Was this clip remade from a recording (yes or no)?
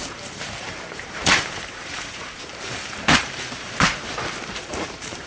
yes